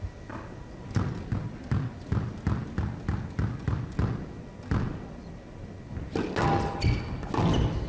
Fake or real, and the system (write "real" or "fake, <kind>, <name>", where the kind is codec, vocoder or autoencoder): real